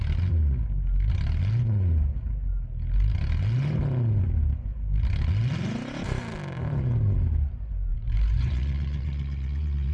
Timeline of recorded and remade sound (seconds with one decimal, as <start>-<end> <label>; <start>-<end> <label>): 0.0-7.9 recorded; 7.9-9.9 remade